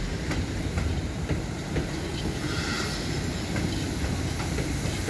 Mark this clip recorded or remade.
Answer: recorded